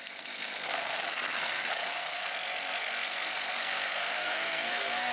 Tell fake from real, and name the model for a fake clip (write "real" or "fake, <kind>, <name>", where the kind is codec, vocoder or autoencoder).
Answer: fake, codec, SNAC